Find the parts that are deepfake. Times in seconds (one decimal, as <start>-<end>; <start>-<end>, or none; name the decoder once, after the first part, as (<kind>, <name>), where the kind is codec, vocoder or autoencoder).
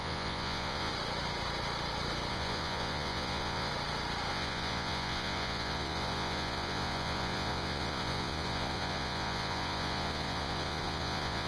0.0-0.9 (vocoder, Vocos); 2.3-3.7; 4.3-11.5